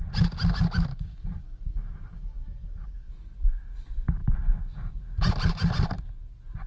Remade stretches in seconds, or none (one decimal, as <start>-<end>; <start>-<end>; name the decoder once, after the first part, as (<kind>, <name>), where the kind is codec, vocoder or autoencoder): 0.9-3.1 (codec, DAC)